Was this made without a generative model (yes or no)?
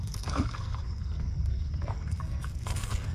no